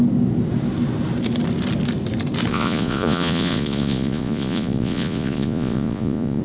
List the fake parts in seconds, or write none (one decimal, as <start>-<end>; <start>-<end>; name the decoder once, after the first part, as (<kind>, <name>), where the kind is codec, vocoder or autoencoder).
2.5-6.4 (vocoder, Vocos)